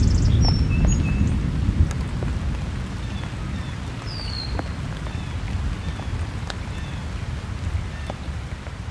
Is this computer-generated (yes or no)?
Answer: no